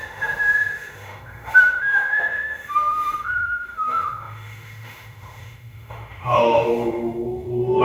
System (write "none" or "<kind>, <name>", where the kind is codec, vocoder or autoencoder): autoencoder, DAC-VAE